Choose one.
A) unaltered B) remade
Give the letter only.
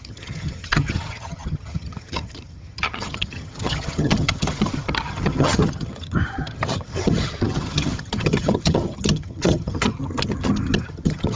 B